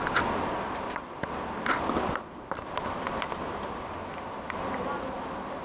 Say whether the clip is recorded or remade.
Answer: recorded